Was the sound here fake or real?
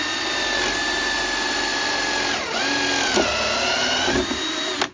real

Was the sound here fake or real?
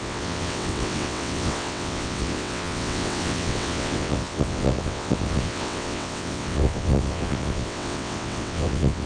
fake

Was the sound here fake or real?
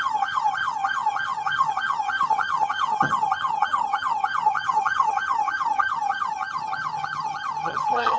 fake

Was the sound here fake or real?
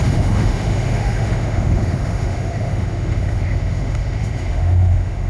fake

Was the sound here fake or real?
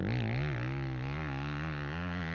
real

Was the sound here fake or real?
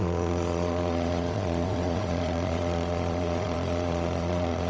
fake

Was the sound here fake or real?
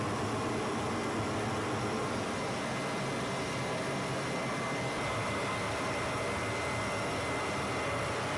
real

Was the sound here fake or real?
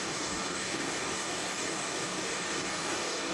fake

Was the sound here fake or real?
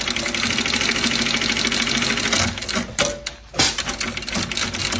real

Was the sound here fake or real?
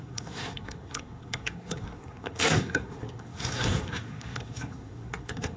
fake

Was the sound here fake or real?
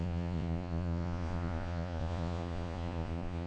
fake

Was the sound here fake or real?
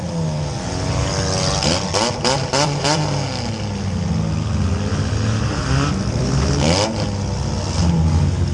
real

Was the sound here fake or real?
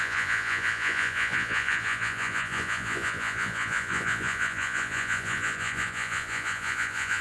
fake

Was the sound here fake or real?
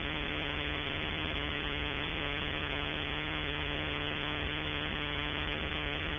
fake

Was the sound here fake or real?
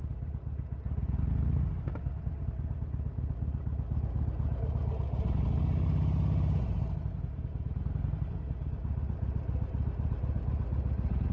real